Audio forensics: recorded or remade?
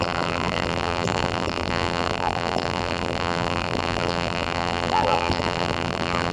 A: remade